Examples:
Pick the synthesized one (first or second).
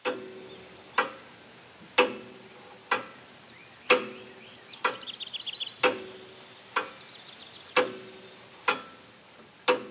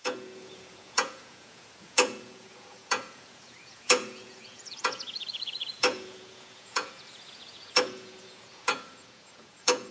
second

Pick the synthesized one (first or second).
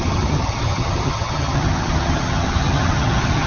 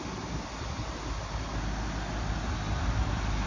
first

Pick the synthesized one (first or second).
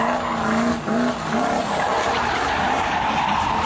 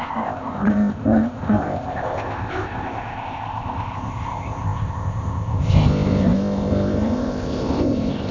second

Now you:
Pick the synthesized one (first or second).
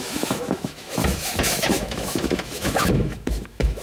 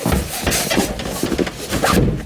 first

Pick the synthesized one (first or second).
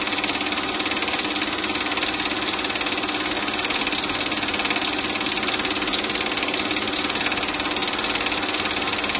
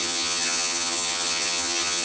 second